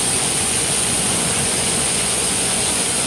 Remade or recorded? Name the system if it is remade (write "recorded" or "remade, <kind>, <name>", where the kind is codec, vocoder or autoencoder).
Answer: remade, vocoder, Vocos